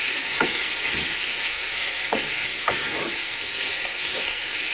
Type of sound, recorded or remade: remade